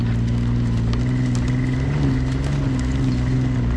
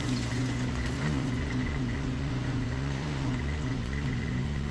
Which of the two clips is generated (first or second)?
second